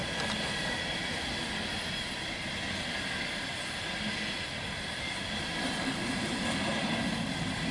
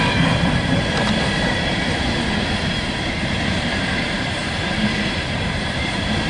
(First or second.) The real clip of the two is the first